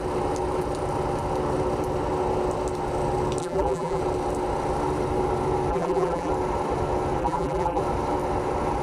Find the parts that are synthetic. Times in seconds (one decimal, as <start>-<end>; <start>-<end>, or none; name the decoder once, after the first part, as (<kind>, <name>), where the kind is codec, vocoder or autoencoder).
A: 3.4-4.0 (vocoder, BigVGAN v2); 5.7-6.3; 7.2-7.8